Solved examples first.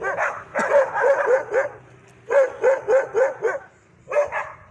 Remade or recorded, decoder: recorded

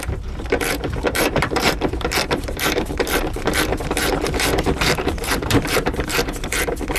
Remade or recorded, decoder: remade, vocoder, BigVGAN v2